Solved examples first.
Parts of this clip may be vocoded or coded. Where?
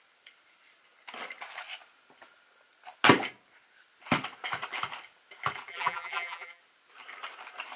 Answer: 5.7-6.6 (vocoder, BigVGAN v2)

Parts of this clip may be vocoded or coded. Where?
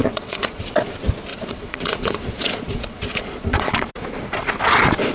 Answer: 0.0-0.6 (vocoder, Vocos); 1.3-3.9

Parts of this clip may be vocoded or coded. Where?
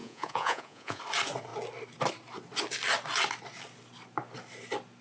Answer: 0.0-1.0 (vocoder, Vocos)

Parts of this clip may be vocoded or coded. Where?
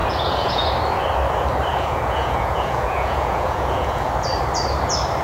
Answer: 0.0-0.7 (vocoder, Vocos); 1.7-4.1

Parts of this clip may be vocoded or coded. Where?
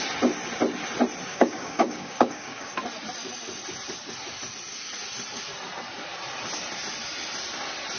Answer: 1.3-2.7 (codec, DAC)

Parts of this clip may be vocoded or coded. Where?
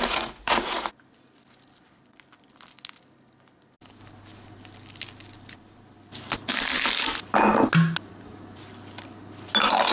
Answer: 0.0-0.9 (vocoder, Vocos)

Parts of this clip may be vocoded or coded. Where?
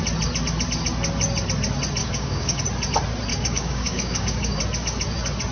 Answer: 2.0-2.6 (codec, DAC); 3.3-4.6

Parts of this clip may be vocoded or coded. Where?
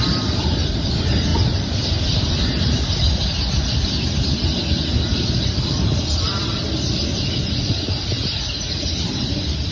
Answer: 0.0-9.7 (vocoder, BigVGAN v2)